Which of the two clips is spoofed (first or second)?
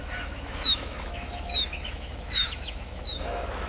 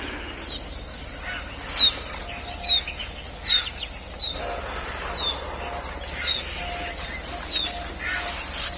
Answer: first